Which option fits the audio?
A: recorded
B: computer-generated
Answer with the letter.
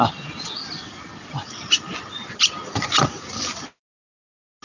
A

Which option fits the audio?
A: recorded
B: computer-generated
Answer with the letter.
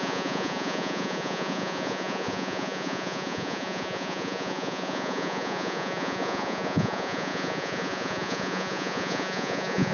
B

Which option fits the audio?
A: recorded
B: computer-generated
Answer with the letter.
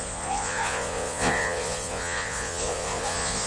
B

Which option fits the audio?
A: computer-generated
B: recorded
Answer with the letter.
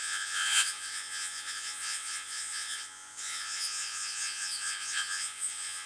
A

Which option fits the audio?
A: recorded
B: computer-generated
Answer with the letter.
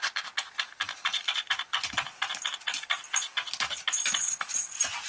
A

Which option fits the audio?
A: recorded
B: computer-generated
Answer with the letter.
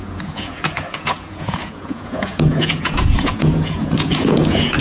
B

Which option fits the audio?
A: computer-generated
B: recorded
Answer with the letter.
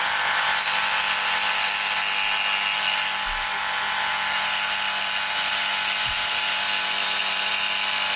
B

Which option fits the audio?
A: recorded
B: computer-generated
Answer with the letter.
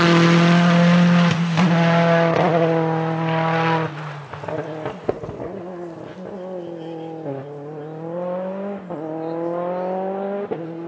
A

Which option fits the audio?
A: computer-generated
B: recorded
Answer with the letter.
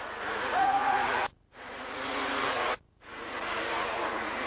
A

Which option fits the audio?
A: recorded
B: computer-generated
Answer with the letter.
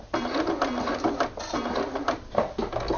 A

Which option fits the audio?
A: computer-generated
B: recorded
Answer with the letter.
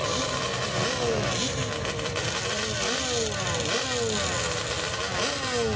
B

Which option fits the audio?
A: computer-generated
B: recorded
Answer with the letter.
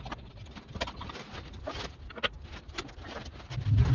B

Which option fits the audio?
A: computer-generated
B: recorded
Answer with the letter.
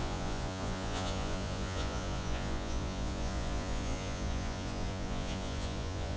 A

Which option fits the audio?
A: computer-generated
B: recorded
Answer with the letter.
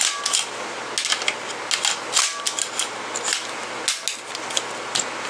B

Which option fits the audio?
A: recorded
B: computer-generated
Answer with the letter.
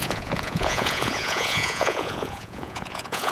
B